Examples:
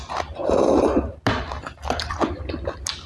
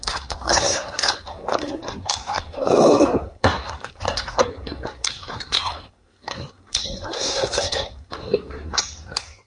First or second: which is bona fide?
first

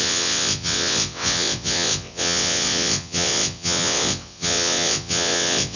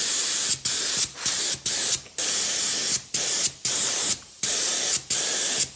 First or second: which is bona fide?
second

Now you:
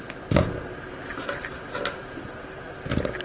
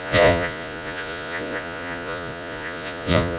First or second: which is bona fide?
first